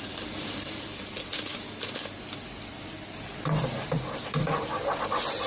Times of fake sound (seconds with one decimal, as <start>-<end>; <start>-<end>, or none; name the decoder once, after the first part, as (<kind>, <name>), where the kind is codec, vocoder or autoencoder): none